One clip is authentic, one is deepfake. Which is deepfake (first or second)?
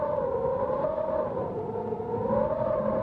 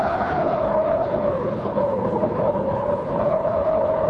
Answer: second